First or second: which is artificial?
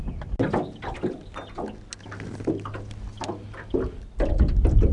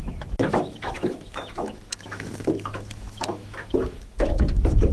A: second